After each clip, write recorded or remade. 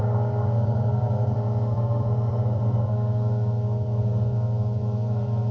remade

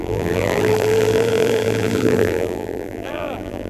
remade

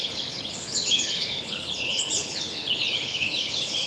remade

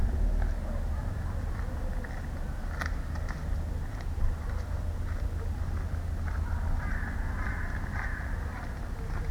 recorded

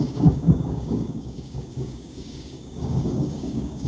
remade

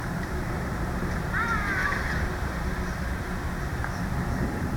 remade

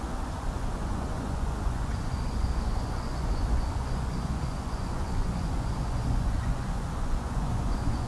remade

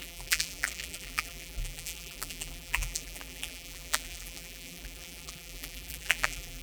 remade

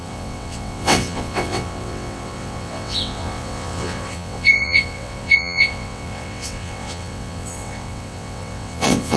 remade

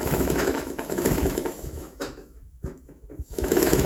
remade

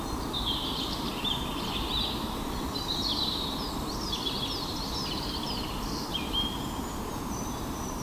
remade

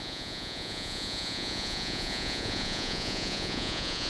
remade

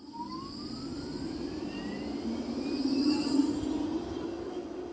recorded